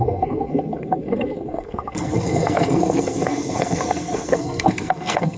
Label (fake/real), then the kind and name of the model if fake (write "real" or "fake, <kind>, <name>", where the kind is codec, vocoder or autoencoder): fake, codec, SNAC